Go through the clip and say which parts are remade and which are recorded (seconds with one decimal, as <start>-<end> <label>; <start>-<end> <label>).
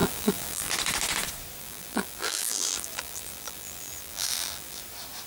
0.0-0.7 remade; 0.7-1.6 recorded; 1.6-4.8 remade; 4.8-5.3 recorded